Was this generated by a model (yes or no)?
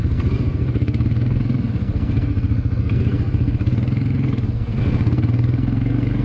yes